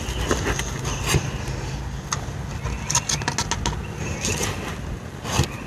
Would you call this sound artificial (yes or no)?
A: no